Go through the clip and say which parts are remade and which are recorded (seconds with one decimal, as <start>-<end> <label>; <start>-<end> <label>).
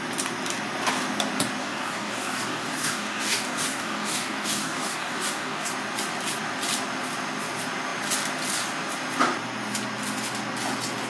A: 0.0-1.6 recorded; 1.6-5.7 remade; 5.7-11.1 recorded